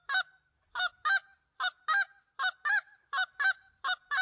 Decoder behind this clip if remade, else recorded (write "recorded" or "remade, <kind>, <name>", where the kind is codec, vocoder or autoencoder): recorded